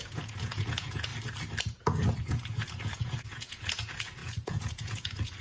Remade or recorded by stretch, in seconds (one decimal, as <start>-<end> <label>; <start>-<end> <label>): 0.0-1.1 remade; 1.1-1.6 recorded; 1.6-5.4 remade